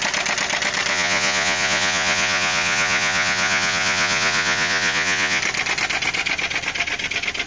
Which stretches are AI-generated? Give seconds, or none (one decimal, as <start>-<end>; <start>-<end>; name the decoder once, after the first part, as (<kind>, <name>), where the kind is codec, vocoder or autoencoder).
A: 0.9-5.4 (vocoder, Vocos)